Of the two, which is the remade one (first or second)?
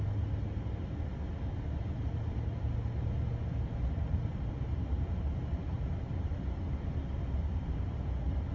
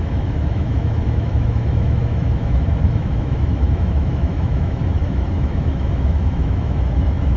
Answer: second